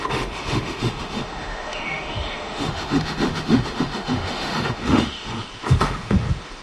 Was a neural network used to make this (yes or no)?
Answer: yes